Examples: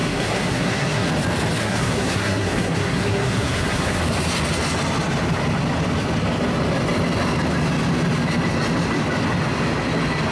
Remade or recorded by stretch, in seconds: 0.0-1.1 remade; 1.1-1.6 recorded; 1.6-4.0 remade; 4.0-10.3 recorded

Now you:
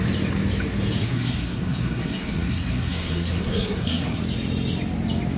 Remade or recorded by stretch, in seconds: 0.0-1.0 recorded; 1.0-4.2 remade; 4.2-5.4 recorded

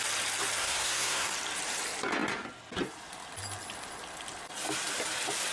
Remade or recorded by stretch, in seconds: 0.0-0.6 recorded; 0.6-1.3 remade; 1.3-5.5 recorded